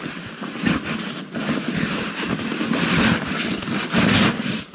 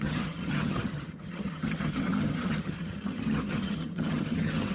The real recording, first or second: first